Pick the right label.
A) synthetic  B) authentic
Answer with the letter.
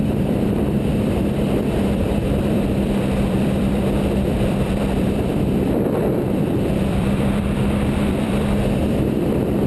A